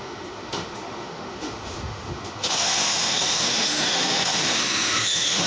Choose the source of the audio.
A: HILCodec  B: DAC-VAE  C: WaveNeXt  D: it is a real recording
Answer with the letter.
B